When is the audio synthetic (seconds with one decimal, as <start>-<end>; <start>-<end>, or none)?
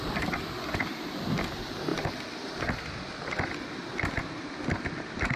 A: none